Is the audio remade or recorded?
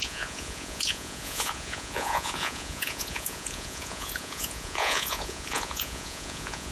remade